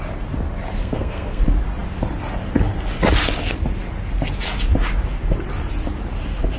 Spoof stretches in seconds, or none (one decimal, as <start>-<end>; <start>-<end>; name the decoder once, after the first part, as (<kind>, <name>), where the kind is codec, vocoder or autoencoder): 0.8-1.4 (codec, SNAC)